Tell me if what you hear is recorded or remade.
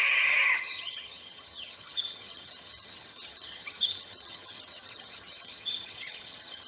remade